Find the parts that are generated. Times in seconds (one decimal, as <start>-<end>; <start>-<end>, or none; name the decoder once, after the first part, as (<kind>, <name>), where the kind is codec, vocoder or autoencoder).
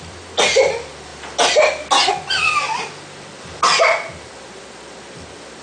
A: none